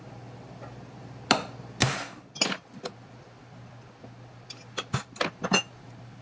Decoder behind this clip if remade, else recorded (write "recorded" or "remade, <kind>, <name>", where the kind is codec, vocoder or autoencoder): recorded